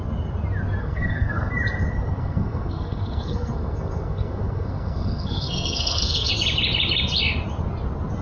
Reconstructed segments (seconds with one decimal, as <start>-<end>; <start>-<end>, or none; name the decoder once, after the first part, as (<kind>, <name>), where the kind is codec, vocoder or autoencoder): 0.8-1.5 (codec, SNAC); 2.2-6.3